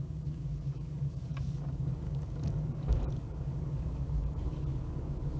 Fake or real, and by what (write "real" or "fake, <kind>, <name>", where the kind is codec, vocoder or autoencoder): fake, codec, DAC